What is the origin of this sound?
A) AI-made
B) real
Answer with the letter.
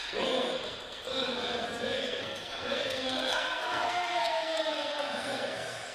A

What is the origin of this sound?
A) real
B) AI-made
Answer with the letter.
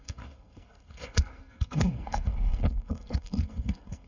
B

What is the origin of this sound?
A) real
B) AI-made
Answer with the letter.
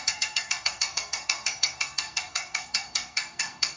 B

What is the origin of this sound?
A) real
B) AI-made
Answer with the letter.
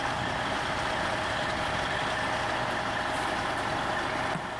A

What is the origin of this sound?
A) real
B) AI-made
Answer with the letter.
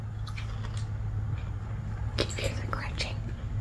A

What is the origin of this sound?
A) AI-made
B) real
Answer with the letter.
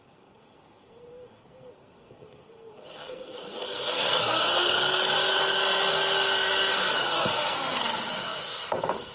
A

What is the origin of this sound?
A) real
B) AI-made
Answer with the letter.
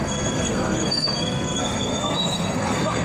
B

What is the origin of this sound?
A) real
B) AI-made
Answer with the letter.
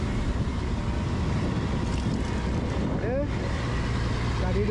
A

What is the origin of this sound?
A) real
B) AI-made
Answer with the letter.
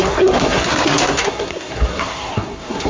B